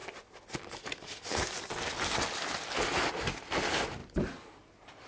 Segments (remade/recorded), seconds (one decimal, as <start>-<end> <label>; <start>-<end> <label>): 0.0-5.1 recorded